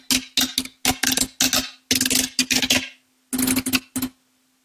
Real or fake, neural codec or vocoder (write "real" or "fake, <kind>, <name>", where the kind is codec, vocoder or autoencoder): real